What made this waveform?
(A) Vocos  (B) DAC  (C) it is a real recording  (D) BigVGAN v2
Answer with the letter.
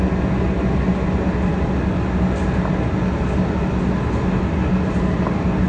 C